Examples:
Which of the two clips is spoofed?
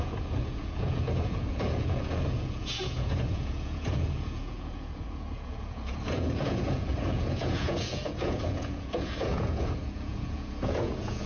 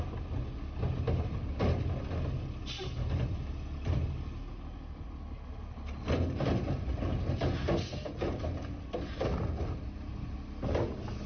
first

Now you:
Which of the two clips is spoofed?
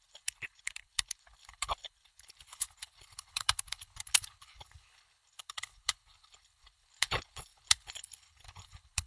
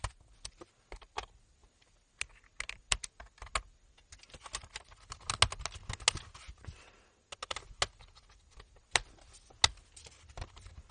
first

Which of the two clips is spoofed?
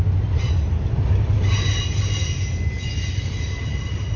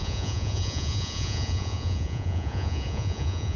second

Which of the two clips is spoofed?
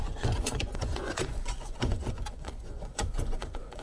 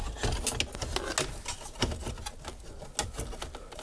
first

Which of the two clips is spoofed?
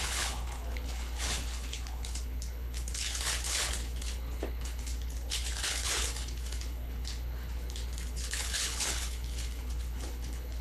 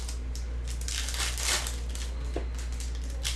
first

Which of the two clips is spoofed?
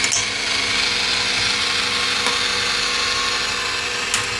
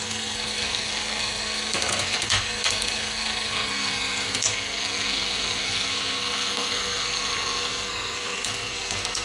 second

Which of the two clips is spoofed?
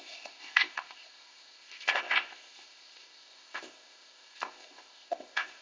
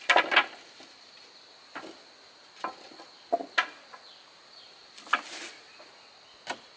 first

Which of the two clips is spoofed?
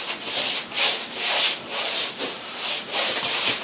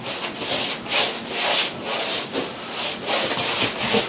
first